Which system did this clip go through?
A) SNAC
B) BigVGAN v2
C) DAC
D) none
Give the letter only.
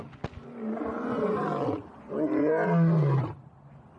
D